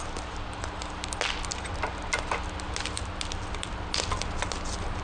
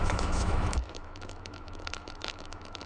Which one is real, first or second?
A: first